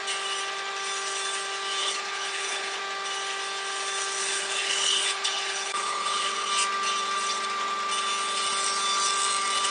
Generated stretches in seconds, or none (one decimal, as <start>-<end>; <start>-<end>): 1.8-2.8; 4.2-6.5